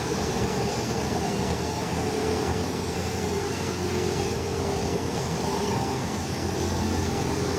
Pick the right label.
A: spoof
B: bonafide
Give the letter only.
A